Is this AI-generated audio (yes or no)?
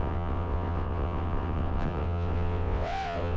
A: yes